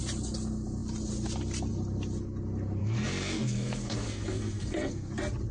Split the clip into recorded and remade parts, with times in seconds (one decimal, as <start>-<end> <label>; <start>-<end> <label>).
0.0-2.8 recorded; 2.8-5.1 remade; 5.1-5.5 recorded